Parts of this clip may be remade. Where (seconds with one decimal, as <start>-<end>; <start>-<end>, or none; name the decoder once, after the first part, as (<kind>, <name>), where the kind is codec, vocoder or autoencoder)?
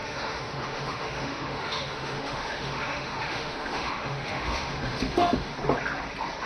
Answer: 0.0-5.5 (autoencoder, DAC-VAE)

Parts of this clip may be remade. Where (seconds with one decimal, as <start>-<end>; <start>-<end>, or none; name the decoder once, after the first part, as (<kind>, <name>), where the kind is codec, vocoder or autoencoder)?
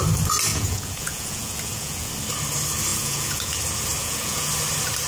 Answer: 0.5-2.1 (vocoder, Vocos); 2.9-3.5; 4.0-4.5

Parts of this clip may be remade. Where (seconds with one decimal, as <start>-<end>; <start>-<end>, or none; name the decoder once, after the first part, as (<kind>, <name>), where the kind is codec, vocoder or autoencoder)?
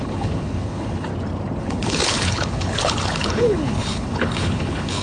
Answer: 0.0-1.1 (codec, HILCodec); 1.6-5.0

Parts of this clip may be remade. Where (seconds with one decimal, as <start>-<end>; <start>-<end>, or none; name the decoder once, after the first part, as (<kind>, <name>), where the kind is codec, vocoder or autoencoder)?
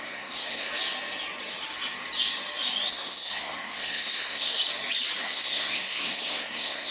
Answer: 0.0-0.7 (codec, SNAC); 2.9-4.6; 5.2-6.9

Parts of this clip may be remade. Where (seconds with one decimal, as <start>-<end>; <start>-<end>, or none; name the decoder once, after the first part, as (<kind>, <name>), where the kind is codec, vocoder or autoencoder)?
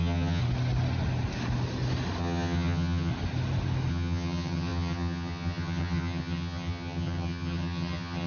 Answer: 0.0-0.4 (vocoder, HiFi-GAN); 2.2-3.1; 3.9-8.3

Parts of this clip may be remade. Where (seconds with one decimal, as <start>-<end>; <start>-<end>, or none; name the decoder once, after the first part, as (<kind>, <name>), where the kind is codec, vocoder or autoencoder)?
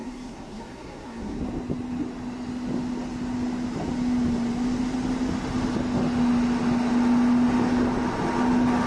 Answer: 0.0-1.4 (codec, SNAC)